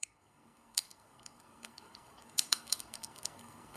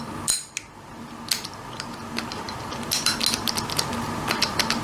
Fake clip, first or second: first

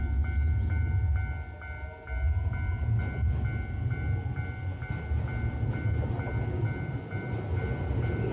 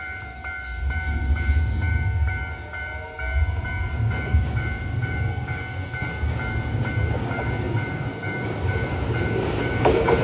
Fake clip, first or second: second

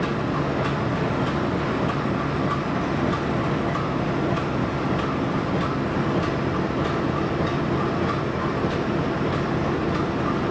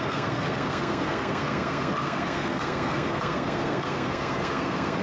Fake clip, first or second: second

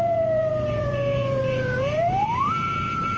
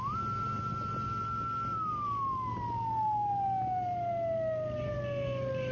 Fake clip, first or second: first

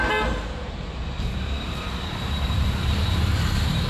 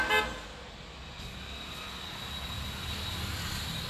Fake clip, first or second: first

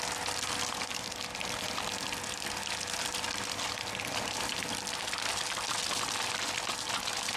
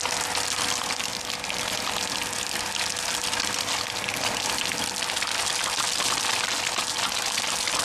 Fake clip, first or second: first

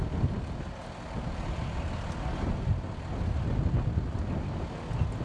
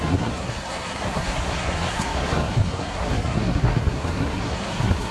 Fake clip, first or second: second